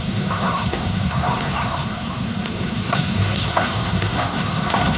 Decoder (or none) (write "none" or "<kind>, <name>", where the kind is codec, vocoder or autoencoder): codec, SNAC